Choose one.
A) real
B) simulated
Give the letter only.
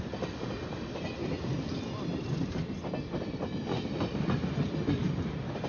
A